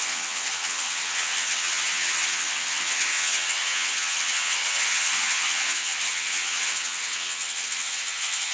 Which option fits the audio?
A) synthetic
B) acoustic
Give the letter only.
A